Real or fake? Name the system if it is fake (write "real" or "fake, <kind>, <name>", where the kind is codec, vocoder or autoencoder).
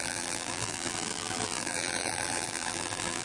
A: fake, vocoder, BigVGAN v2